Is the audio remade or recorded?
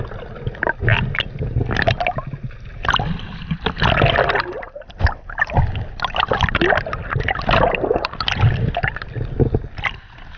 recorded